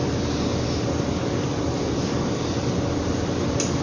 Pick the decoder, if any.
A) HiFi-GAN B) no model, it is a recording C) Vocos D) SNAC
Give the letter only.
B